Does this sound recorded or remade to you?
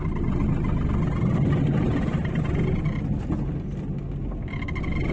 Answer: recorded